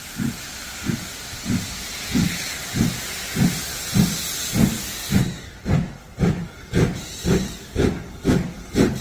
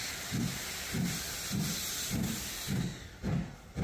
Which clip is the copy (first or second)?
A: second